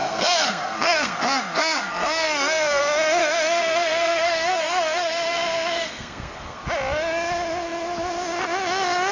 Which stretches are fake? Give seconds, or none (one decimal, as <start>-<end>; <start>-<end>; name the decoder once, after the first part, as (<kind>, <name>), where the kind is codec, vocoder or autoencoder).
0.0-2.8 (codec, SNAC); 3.2-6.6